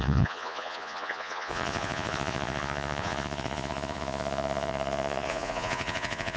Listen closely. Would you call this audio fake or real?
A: fake